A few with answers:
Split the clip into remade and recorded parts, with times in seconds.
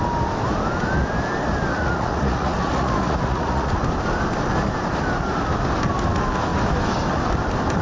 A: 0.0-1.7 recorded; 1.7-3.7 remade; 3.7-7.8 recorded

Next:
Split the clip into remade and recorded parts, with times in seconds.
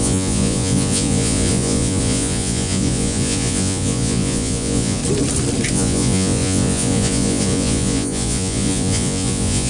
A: 0.0-5.0 remade; 5.0-5.7 recorded; 5.7-9.7 remade